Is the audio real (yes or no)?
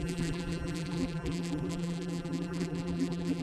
no